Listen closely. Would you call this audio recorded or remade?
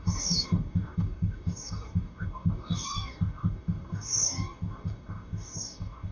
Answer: remade